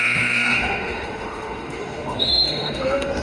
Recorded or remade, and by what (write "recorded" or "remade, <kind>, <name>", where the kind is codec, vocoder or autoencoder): remade, autoencoder, DAC-VAE